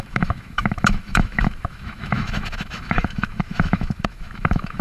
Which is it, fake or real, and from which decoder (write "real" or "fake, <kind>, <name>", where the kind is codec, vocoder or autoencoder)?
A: fake, autoencoder, DAC-VAE